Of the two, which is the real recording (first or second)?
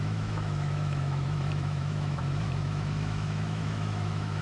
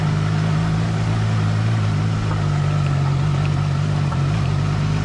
second